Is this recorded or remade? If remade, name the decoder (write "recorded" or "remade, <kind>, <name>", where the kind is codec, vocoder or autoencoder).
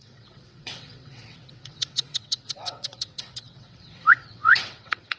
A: remade, vocoder, WaveNeXt